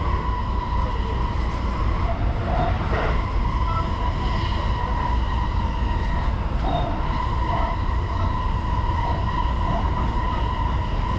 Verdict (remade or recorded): recorded